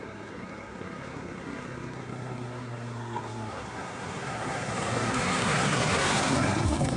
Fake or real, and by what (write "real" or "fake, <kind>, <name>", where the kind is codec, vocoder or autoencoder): fake, codec, SNAC